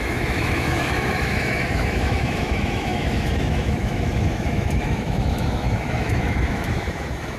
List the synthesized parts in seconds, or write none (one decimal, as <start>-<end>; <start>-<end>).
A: 0.0-7.4